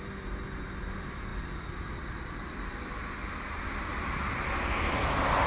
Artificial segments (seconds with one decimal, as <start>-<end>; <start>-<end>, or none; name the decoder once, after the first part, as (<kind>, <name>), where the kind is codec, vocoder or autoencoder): none